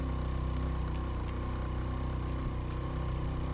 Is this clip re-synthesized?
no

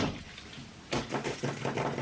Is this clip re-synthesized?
no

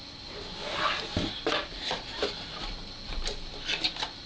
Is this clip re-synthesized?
no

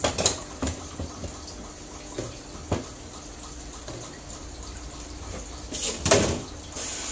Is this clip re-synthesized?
no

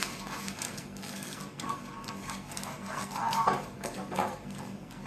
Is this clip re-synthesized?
yes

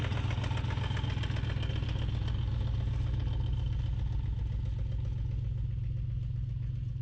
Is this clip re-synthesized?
no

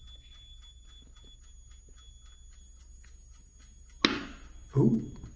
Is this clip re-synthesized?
no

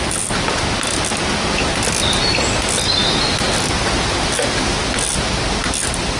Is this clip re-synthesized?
no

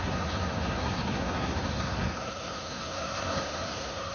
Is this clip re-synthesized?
yes